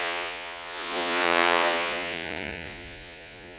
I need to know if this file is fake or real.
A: fake